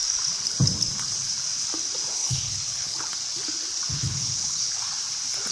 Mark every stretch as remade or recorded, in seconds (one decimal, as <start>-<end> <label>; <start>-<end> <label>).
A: 0.0-2.2 recorded; 2.2-3.1 remade; 3.1-3.9 recorded; 3.9-4.8 remade; 4.8-5.5 recorded